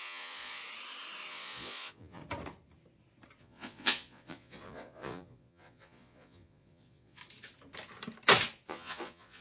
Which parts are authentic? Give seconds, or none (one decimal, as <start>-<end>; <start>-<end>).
0.6-1.3; 2.2-3.4; 7.2-8.7